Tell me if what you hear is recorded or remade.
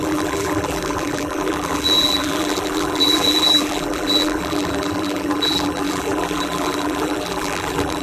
remade